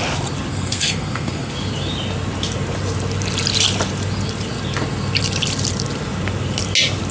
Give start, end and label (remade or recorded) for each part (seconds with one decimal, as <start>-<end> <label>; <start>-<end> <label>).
0.0-0.5 recorded; 0.5-1.5 remade; 1.5-7.1 recorded